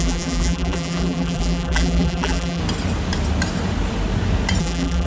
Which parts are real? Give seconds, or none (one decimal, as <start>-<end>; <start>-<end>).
2.6-4.6